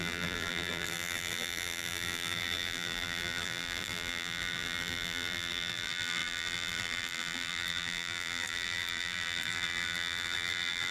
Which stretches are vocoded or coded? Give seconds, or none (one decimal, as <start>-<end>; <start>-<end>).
0.0-10.9